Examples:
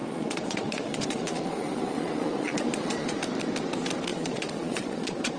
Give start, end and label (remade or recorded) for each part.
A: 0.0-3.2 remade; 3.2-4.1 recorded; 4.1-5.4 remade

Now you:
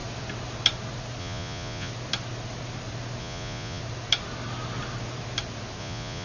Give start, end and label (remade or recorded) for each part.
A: 0.0-1.2 recorded; 1.2-1.9 remade; 1.9-3.2 recorded; 3.2-3.8 remade; 3.8-5.8 recorded; 5.8-6.2 remade

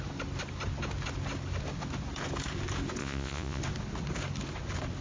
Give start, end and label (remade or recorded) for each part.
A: 0.0-3.0 recorded; 3.0-3.6 remade; 3.6-5.0 recorded

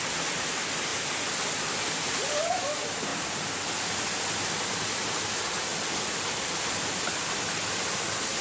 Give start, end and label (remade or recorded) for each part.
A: 0.0-8.4 recorded

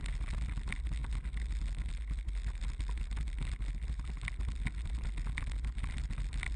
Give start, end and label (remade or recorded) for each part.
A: 0.0-6.6 recorded

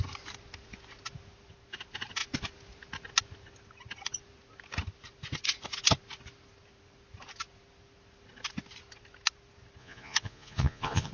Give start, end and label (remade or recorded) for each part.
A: 0.0-9.8 recorded; 9.8-11.1 remade

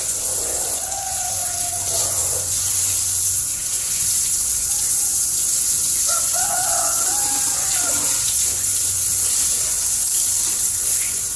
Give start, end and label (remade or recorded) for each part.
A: 0.0-10.0 remade; 10.0-10.6 recorded; 10.6-11.4 remade